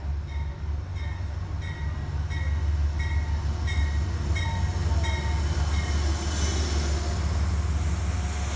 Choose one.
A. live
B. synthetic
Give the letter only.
A